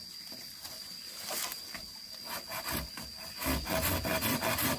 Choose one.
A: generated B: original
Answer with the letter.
B